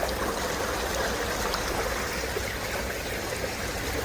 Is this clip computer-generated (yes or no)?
no